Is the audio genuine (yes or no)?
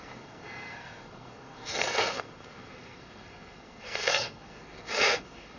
no